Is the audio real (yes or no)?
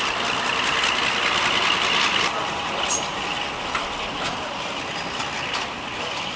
yes